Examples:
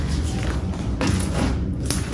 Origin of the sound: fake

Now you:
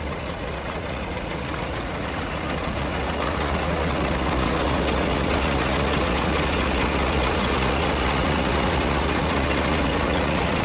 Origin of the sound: fake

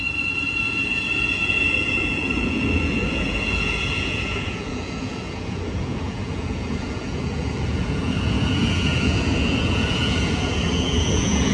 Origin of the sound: fake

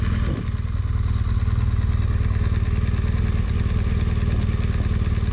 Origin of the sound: real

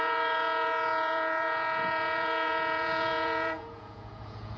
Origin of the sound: fake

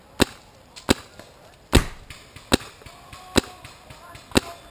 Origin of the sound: real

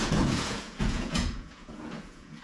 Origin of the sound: fake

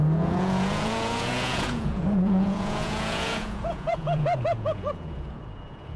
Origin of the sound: fake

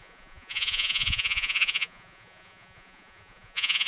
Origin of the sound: fake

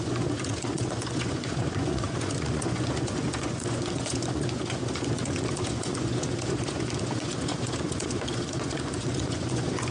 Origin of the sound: fake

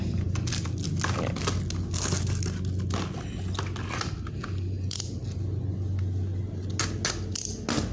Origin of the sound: real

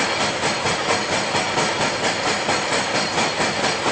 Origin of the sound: real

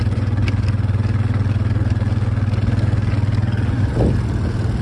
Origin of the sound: real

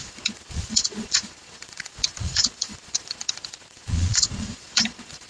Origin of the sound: fake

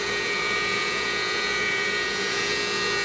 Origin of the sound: fake